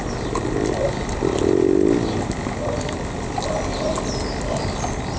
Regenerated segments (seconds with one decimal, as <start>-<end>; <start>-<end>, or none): none